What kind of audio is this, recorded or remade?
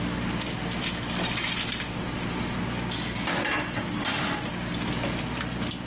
recorded